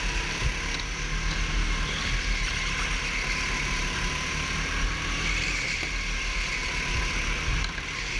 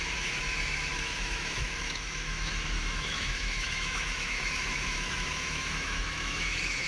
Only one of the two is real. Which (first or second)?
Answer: first